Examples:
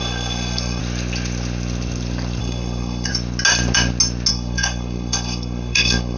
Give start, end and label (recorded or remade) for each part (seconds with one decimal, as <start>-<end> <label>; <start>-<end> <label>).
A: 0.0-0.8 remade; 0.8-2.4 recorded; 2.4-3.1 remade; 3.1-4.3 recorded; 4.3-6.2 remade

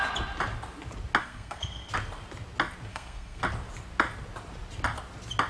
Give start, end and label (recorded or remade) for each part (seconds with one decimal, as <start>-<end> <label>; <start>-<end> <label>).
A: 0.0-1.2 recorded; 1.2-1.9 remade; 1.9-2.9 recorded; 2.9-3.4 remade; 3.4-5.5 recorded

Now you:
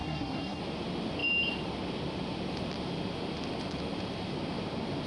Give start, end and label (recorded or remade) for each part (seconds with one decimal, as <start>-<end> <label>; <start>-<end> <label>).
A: 0.0-0.6 remade; 0.6-5.1 recorded